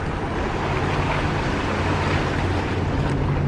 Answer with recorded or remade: recorded